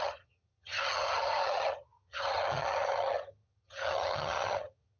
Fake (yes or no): yes